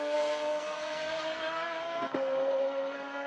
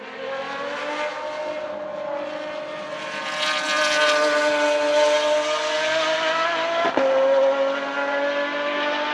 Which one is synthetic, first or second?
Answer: first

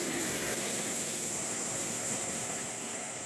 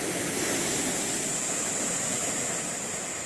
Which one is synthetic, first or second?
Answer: first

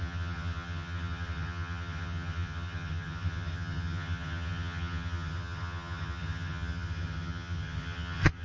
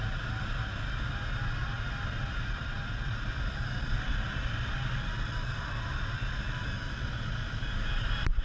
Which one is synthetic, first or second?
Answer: first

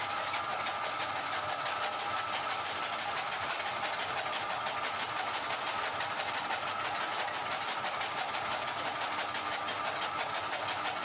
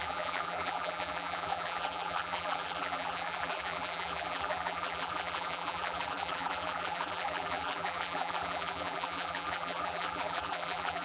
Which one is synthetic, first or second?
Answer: second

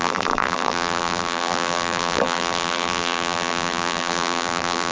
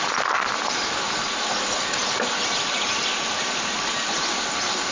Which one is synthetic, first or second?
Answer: first